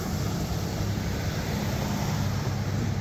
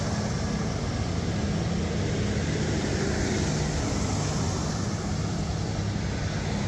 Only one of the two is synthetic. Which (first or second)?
first